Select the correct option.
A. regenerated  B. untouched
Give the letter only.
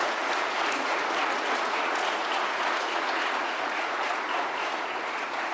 A